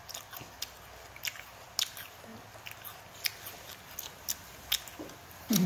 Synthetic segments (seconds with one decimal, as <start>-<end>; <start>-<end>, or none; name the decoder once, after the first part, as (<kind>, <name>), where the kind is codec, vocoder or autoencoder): none